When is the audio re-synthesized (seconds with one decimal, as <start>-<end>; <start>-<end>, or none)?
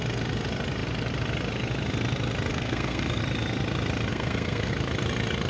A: 2.5-3.2; 4.1-4.7